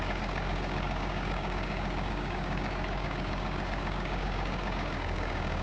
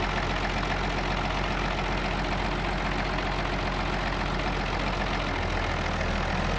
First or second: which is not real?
first